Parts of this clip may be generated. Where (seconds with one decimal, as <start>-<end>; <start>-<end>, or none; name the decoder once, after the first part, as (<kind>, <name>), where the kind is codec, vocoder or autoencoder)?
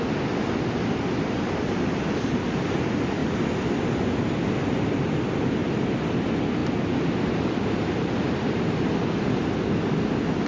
5.6-6.1 (vocoder, BigVGAN v2)